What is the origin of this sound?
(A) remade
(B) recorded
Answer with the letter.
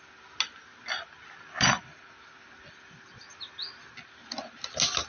B